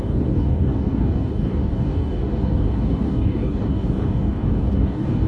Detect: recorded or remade remade